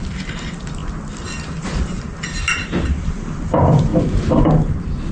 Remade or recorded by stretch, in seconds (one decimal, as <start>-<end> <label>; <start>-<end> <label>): 0.0-5.1 recorded